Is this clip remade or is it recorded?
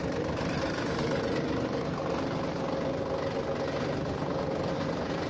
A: recorded